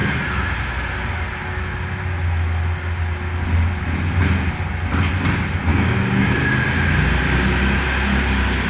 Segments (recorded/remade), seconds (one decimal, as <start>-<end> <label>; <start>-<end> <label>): 0.0-5.7 recorded; 5.7-6.3 remade; 6.3-8.7 recorded

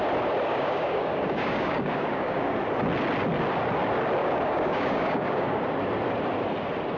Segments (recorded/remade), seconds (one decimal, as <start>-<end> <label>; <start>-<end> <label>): 0.0-0.5 recorded; 0.5-2.6 remade; 2.6-4.2 recorded; 4.2-5.6 remade; 5.6-7.0 recorded

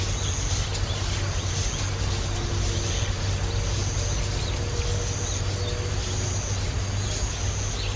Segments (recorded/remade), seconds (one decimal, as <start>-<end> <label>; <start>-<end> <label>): 0.0-8.0 recorded

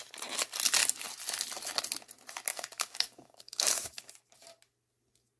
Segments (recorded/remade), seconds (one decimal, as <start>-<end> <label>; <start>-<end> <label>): 0.0-2.5 recorded; 2.5-4.1 remade; 4.1-5.4 recorded